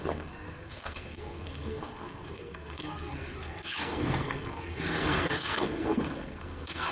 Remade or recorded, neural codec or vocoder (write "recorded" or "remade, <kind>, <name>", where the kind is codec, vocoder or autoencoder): remade, codec, SNAC